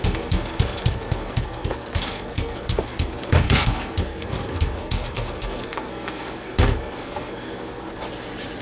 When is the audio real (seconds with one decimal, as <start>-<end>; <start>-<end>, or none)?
7.9-8.6